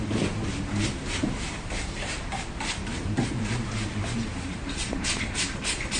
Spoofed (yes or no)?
yes